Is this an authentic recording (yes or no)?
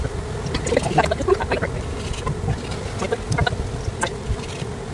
yes